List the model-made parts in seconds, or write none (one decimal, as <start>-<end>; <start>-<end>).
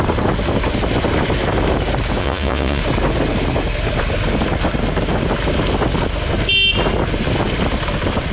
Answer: 2.2-2.8